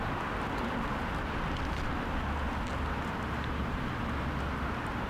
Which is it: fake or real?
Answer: real